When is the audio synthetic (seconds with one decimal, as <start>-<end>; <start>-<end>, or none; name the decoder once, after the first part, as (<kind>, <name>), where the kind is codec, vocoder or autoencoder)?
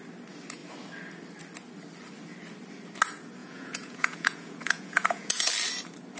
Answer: 3.4-5.5 (vocoder, Vocos)